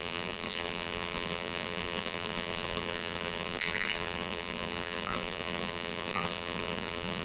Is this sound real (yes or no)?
no